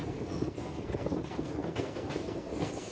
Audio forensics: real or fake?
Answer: fake